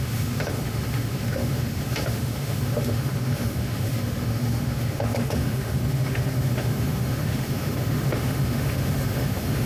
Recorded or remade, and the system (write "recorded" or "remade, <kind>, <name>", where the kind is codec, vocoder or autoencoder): remade, autoencoder, DAC-VAE